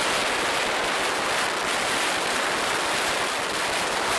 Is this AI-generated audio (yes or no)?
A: no